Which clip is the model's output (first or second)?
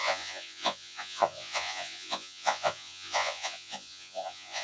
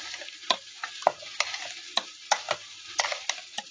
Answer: first